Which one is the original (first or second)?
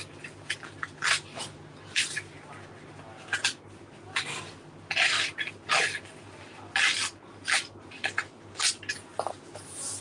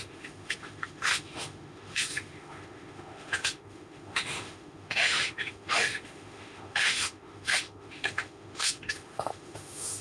first